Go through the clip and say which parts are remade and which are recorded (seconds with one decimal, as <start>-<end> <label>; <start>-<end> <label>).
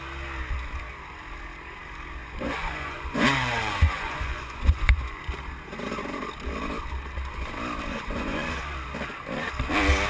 0.0-2.2 recorded; 2.2-5.2 remade; 5.2-7.9 recorded; 7.9-8.5 remade; 8.5-10.1 recorded